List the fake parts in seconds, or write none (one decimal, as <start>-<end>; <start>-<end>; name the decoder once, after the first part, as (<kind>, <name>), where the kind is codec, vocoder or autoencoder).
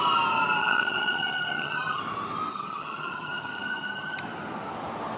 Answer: 0.6-2.0 (vocoder, HiFi-GAN); 2.5-4.2